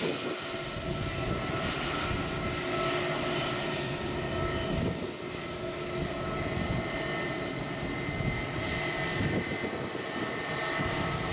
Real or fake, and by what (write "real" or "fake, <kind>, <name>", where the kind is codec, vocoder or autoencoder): real